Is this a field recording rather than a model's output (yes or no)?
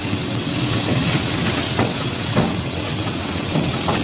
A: no